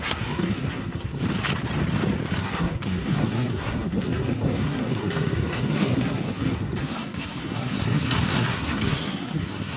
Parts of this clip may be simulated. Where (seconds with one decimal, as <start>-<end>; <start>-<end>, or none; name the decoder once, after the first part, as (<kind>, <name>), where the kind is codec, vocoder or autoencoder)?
0.0-1.2 (codec, SNAC); 2.4-9.8